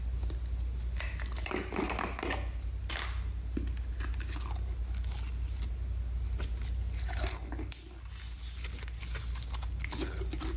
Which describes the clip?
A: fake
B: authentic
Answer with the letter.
B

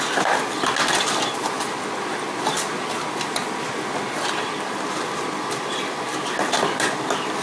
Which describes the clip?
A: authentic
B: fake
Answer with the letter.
A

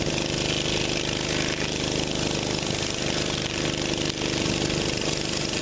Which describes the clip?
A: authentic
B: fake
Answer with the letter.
A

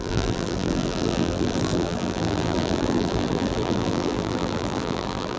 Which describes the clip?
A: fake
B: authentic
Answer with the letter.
A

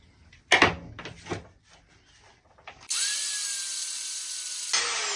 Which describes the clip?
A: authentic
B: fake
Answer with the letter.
A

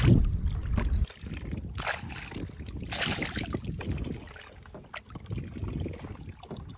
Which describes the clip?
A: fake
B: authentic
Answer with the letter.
B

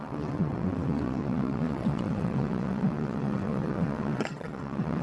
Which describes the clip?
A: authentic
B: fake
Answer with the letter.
B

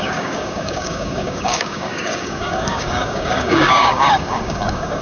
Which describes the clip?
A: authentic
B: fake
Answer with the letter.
B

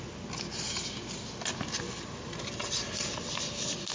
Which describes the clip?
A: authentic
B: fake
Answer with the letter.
A